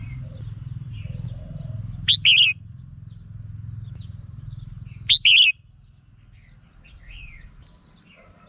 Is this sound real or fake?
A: real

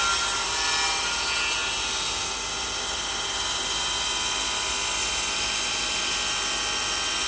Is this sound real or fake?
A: real